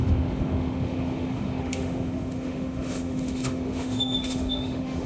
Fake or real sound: fake